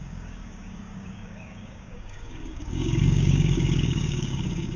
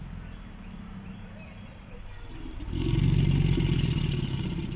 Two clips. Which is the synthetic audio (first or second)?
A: first